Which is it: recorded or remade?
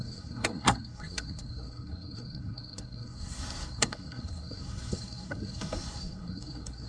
remade